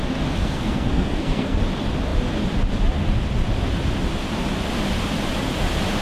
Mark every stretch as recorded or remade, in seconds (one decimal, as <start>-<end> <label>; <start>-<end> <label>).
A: 0.0-0.4 recorded; 0.4-1.6 remade; 1.6-6.0 recorded